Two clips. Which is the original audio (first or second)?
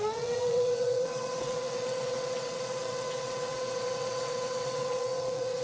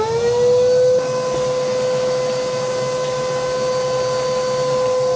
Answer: second